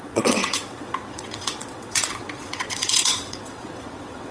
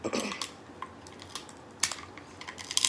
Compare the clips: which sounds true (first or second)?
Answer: second